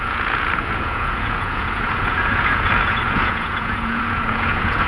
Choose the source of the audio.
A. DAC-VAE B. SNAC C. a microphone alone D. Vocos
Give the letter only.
D